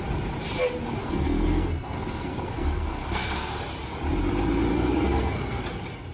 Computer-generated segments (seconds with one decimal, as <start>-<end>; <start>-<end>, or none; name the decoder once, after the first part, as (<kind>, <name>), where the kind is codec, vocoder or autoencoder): 1.0-3.6 (codec, SNAC); 4.7-5.6